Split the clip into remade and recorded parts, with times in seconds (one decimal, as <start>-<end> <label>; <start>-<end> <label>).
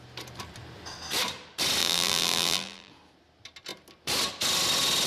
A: 0.0-1.8 recorded; 1.8-2.9 remade; 2.9-5.1 recorded